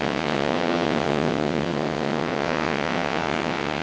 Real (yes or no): no